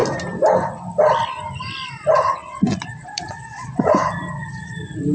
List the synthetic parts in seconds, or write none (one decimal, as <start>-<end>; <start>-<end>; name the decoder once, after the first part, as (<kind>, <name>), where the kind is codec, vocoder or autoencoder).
2.4-3.9 (vocoder, Vocos)